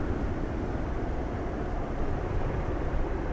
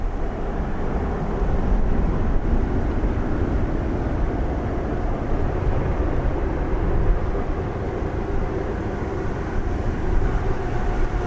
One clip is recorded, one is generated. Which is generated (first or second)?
first